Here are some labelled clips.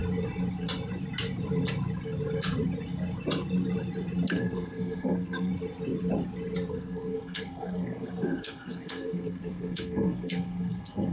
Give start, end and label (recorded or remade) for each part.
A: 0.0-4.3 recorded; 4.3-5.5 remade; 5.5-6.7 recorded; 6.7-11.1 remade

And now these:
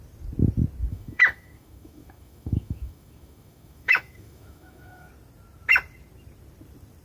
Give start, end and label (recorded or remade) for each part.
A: 0.0-0.9 recorded; 0.9-5.1 remade; 5.1-7.0 recorded